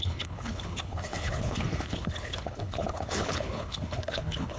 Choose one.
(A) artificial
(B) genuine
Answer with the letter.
A